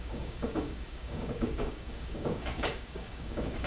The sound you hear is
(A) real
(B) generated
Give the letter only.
B